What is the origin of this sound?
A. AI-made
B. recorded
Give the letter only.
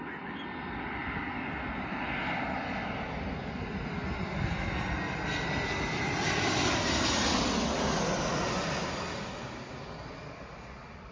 B